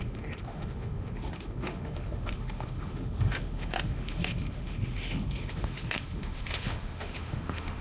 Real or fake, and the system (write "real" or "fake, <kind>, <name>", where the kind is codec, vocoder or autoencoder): fake, autoencoder, DAC-VAE